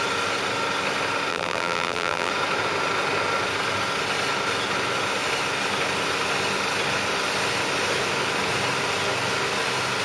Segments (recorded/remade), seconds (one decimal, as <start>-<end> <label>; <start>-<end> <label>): 0.0-1.3 recorded; 1.3-2.3 remade; 2.3-10.0 recorded